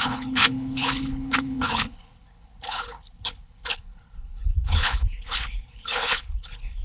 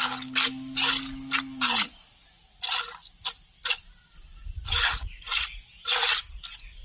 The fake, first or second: first